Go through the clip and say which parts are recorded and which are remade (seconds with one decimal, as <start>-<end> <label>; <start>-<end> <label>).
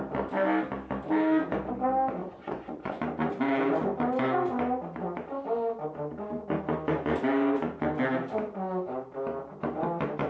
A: 0.0-2.2 recorded; 2.2-3.0 remade; 3.0-10.3 recorded